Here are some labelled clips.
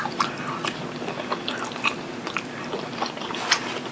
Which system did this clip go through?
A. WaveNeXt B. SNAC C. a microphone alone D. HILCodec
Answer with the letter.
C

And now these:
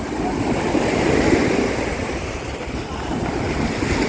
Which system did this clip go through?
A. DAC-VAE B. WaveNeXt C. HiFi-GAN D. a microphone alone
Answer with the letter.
D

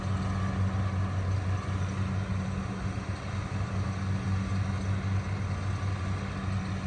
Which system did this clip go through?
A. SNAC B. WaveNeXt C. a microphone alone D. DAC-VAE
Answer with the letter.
C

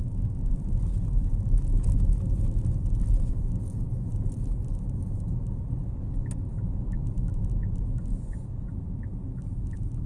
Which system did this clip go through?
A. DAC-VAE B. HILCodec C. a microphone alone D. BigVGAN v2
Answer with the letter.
C